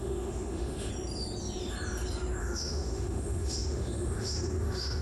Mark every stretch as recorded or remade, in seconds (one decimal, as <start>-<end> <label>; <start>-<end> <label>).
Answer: 0.0-0.9 remade; 0.9-2.4 recorded; 2.4-5.0 remade